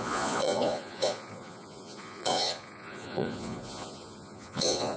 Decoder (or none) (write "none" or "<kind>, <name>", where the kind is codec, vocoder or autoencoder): vocoder, Vocos